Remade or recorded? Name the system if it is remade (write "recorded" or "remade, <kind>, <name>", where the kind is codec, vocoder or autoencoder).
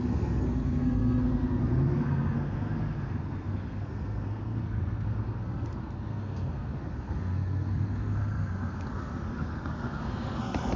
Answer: remade, codec, SNAC